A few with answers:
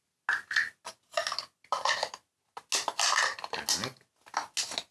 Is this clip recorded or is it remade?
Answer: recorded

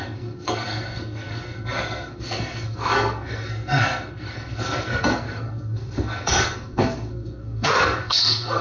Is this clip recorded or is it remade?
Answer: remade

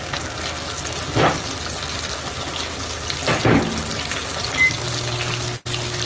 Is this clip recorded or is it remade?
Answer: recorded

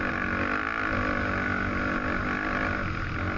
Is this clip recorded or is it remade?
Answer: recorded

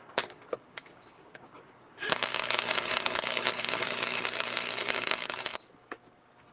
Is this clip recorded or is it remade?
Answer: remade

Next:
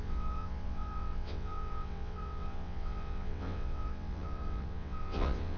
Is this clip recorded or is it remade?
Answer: remade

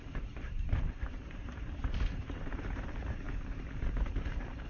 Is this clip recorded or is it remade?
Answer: remade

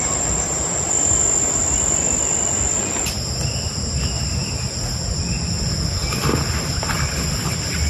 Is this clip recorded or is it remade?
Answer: recorded